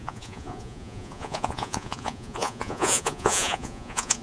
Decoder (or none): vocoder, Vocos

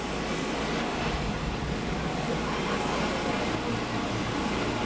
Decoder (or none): none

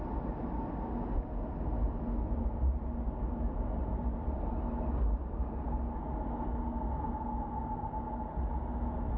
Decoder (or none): none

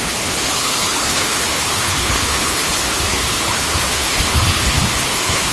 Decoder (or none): codec, HILCodec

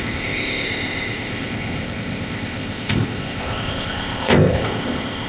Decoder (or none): codec, ZipCodec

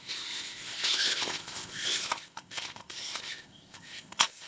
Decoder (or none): codec, ZipCodec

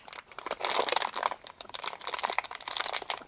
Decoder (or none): none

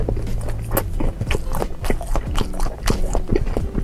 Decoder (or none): none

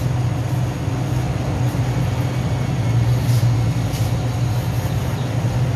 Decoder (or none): none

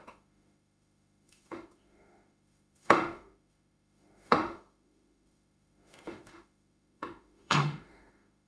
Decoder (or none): autoencoder, DAC-VAE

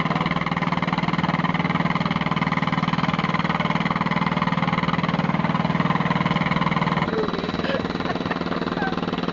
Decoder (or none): none